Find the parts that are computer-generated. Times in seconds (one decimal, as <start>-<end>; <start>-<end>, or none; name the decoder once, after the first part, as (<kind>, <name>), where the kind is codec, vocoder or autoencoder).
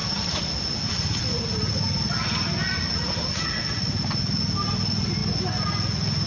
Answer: none